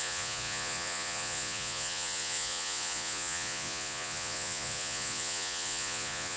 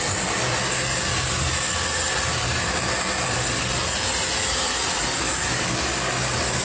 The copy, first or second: first